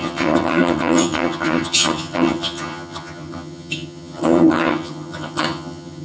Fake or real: fake